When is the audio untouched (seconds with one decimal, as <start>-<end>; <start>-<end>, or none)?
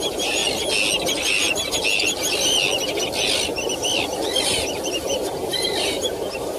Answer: 0.4-4.4